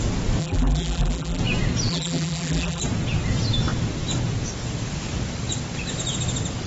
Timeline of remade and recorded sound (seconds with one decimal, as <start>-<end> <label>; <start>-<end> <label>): 0.0-0.4 recorded; 0.4-1.4 remade; 1.4-1.9 recorded; 1.9-2.8 remade; 2.8-6.7 recorded